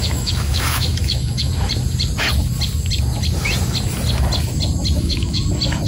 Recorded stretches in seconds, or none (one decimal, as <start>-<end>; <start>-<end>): 1.5-5.0; 5.4-5.9